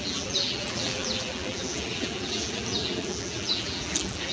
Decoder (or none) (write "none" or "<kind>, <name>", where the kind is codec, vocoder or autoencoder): vocoder, BigVGAN v2